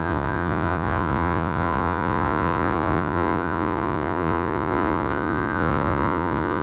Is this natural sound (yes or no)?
no